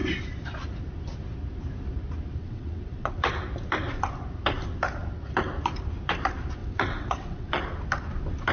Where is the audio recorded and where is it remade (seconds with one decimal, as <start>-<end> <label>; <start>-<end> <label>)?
0.0-2.4 recorded; 2.4-3.3 remade; 3.3-6.6 recorded; 6.6-7.6 remade; 7.6-8.5 recorded